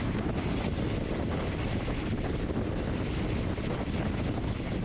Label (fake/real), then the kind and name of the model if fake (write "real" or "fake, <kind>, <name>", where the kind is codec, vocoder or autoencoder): real